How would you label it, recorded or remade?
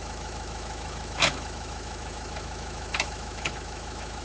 remade